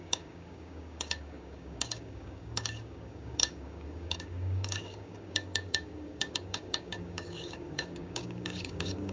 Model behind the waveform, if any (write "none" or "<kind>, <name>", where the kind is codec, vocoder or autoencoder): codec, DAC